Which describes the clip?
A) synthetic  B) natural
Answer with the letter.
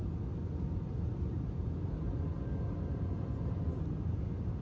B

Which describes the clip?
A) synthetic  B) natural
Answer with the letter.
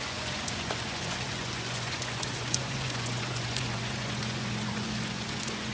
A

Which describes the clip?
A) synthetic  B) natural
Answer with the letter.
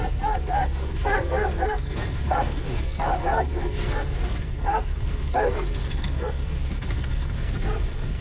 A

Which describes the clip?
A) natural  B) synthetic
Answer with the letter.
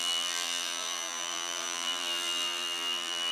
B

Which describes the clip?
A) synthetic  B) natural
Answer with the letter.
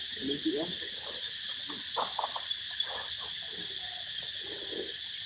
B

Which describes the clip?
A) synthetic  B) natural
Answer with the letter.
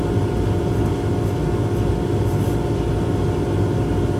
B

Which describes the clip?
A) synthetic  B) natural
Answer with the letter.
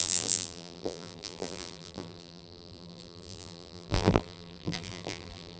A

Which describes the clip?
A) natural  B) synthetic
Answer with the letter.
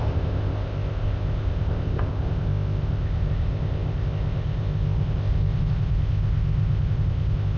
B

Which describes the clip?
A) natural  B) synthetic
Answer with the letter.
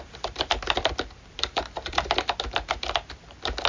B